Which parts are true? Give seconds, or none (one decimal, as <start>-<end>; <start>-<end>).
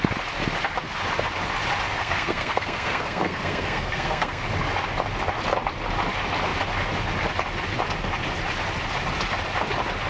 0.0-2.0; 4.4-10.1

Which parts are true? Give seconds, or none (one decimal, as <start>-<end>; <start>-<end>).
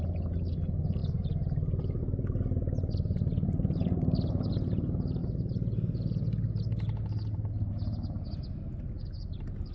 0.0-9.7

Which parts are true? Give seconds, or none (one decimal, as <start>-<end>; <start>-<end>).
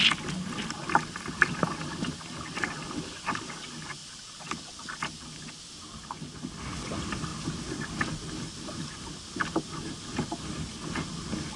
0.0-11.6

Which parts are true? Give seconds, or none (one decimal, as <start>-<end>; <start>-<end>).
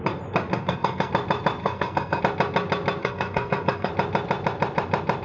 0.0-0.5; 1.1-1.6; 2.2-3.0; 3.9-5.2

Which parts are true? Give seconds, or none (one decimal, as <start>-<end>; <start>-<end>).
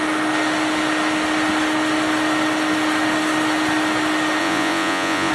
0.0-4.4